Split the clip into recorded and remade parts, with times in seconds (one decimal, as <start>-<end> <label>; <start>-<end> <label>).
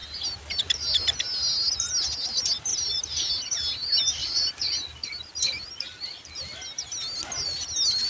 0.0-2.7 recorded; 2.7-3.3 remade; 3.3-4.2 recorded; 4.2-5.7 remade; 5.7-8.1 recorded